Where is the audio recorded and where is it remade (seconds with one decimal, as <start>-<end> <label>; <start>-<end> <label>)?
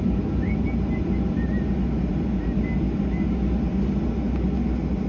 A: 0.0-5.1 recorded